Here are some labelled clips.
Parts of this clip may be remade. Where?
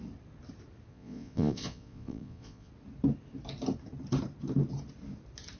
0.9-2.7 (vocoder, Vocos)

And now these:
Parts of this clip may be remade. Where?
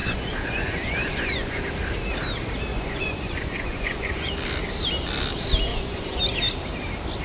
0.0-1.6 (vocoder, Vocos); 2.7-4.3; 5.7-6.2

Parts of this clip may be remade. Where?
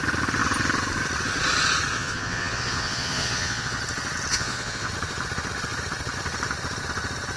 1.9-3.8 (vocoder, Vocos); 4.3-4.9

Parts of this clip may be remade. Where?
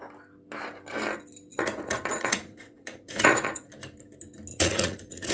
1.5-3.7 (vocoder, Vocos); 4.5-5.3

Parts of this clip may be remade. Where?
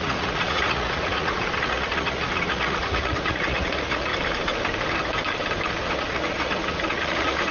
0.0-4.1 (vocoder, Vocos); 5.9-7.5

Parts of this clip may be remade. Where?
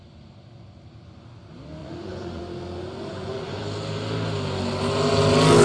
1.8-2.4 (vocoder, Vocos); 3.1-3.6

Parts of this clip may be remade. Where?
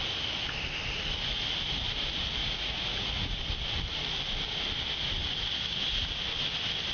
2.4-3.4 (vocoder, Vocos)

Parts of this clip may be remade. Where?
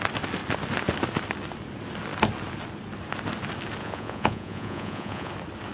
3.8-5.3 (vocoder, Vocos)